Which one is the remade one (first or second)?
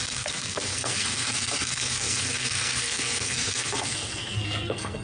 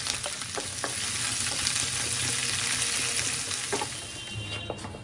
first